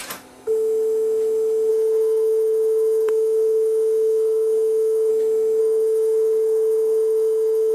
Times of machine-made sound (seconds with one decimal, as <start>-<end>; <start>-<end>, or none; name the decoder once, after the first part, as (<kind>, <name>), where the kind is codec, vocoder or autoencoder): 1.7-5.1 (codec, SNAC); 5.6-7.7